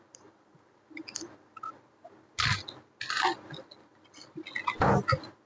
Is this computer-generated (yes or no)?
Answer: no